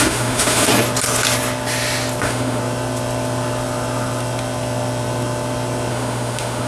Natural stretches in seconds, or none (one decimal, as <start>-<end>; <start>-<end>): 0.7-2.2; 2.6-5.9